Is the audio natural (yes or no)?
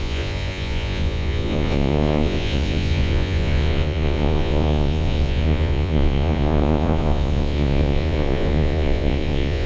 no